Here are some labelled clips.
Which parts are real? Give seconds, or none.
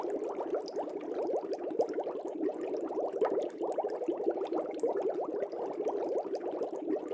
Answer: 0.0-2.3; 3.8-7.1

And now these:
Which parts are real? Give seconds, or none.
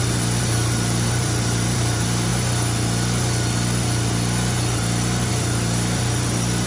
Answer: 2.3-5.3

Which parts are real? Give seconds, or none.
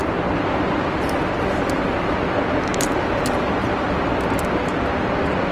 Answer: 0.0-2.7; 3.9-5.5